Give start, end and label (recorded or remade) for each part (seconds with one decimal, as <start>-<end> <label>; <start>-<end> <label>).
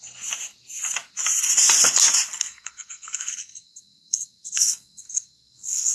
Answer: 0.0-2.3 recorded; 2.3-5.9 remade